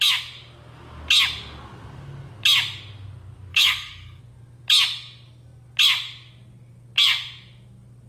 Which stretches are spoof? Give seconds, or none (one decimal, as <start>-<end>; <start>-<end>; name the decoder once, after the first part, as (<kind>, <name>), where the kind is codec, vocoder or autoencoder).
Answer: 3.5-4.2 (codec, DAC)